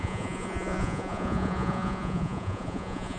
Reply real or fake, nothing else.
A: fake